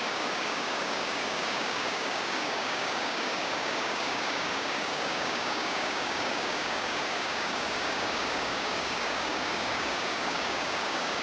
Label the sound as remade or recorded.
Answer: remade